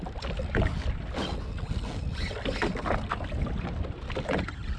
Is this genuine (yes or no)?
yes